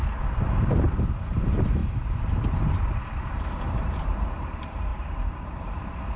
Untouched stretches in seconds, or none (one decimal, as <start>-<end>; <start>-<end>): 0.0-0.7; 1.8-3.0